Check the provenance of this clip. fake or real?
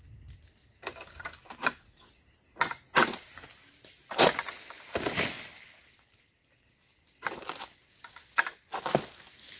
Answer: real